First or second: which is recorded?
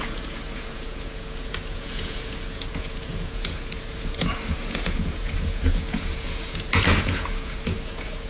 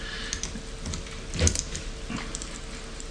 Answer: second